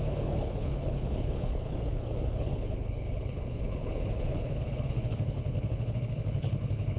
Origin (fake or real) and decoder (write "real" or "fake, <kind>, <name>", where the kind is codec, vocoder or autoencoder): fake, codec, HILCodec